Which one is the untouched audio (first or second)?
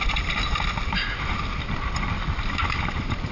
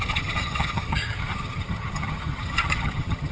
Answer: first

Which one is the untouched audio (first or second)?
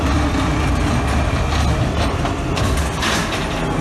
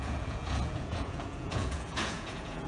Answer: first